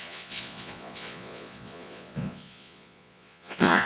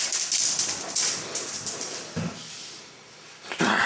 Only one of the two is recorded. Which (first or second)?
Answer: second